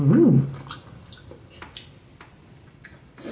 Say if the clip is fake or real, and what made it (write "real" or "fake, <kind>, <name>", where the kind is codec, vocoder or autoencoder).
real